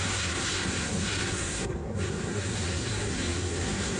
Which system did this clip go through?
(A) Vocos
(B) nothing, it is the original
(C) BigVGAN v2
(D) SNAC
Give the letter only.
D